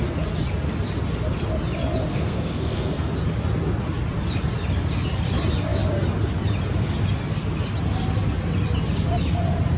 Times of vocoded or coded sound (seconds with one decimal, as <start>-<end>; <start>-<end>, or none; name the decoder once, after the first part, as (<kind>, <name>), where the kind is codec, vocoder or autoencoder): 2.1-3.1 (codec, SNAC)